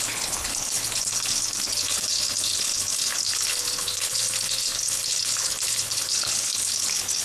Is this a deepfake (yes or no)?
yes